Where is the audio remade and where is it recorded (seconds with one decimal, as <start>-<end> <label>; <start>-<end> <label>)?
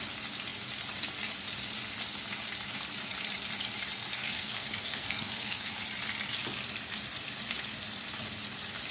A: 0.0-4.2 recorded; 4.2-5.7 remade; 5.7-8.9 recorded